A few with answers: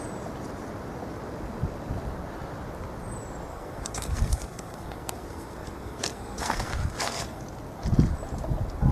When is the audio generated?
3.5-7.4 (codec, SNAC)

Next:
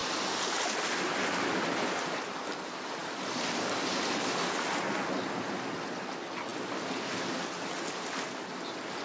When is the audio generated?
none

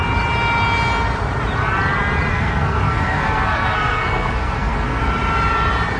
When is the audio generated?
2.3-5.0 (codec, SNAC)

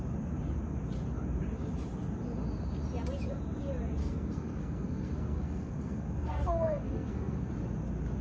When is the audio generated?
4.0-7.5 (codec, SNAC)

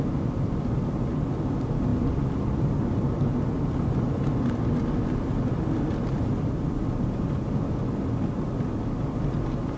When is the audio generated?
none

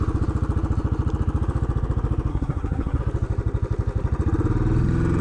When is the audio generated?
2.3-3.0 (codec, SNAC)

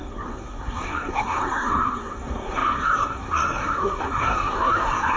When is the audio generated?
0.0-5.2 (codec, SNAC)

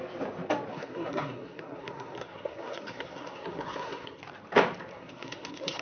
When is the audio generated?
0.7-4.2 (codec, SNAC); 4.9-5.8